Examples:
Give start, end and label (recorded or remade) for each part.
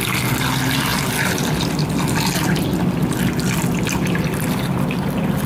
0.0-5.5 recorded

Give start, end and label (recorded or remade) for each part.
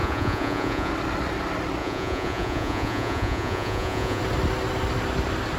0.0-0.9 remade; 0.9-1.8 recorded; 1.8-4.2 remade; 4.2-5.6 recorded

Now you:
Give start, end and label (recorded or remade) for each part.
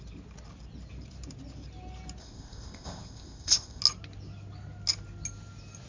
0.0-2.2 recorded; 2.2-3.8 remade; 3.8-5.9 recorded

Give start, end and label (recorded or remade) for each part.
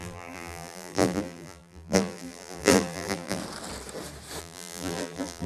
0.0-3.4 remade; 3.4-4.4 recorded; 4.4-5.5 remade